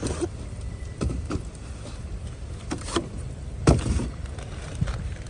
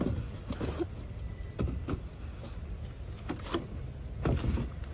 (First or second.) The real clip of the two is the second